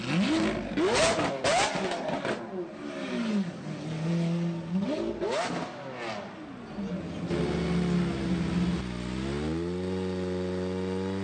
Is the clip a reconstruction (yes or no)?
no